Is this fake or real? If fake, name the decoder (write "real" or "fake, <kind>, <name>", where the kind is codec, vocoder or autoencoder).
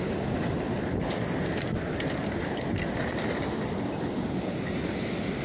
real